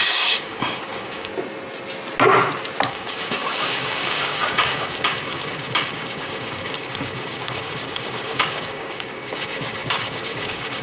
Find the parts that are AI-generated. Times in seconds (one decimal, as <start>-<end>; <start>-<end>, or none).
0.0-1.3; 2.9-10.8